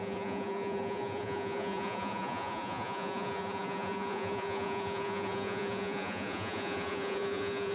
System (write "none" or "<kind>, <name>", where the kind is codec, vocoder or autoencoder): vocoder, Vocos